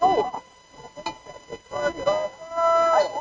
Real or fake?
real